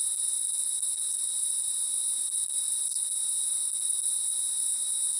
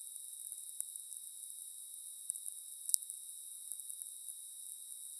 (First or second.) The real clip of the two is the second